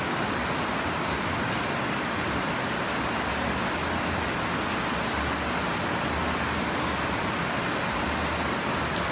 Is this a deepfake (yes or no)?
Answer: no